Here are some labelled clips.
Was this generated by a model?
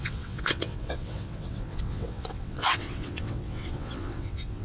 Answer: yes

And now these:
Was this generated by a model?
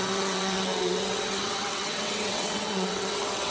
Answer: yes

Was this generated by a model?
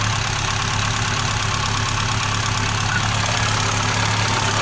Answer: no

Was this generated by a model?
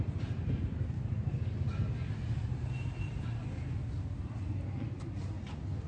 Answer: no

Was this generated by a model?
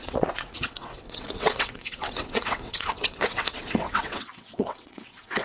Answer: yes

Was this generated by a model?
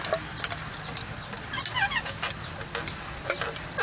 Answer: no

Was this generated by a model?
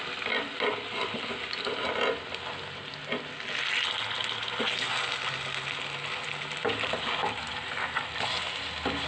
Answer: no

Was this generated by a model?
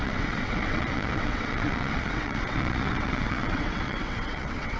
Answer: yes